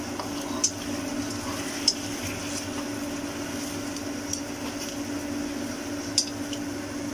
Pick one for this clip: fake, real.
real